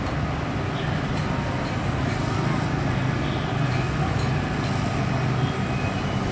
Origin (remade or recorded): recorded